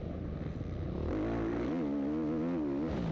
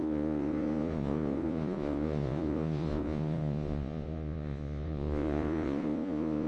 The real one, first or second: first